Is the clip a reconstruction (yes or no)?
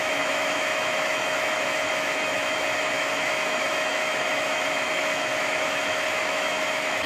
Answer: yes